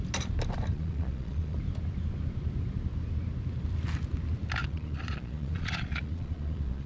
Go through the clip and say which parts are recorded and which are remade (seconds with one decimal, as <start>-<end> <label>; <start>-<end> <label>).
0.0-0.7 recorded; 0.7-1.6 remade; 1.6-4.6 recorded; 4.6-6.9 remade